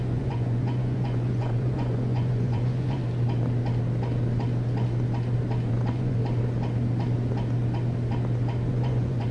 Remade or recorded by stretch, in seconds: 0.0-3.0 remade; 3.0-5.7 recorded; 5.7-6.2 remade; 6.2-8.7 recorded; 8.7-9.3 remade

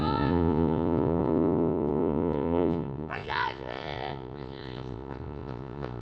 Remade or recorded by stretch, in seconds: 0.0-6.0 remade